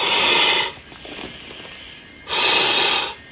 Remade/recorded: recorded